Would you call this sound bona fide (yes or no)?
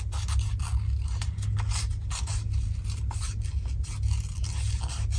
yes